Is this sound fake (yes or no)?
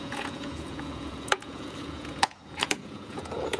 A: yes